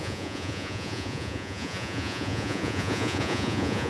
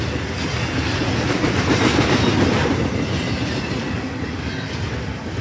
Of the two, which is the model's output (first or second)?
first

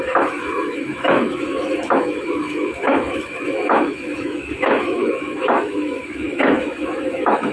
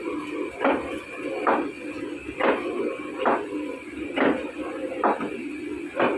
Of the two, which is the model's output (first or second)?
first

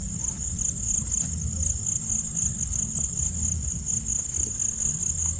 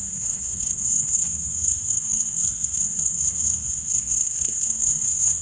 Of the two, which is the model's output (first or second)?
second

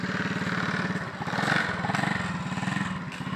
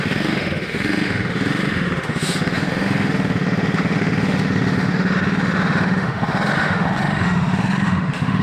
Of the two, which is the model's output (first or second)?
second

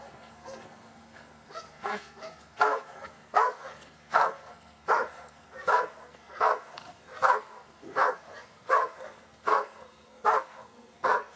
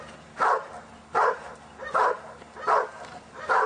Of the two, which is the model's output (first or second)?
first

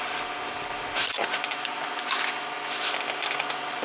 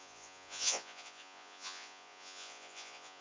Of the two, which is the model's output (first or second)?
second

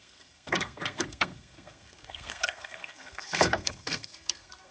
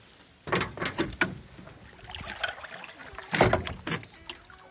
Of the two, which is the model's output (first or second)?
first